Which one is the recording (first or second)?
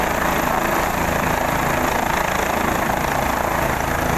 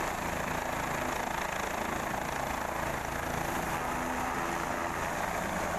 second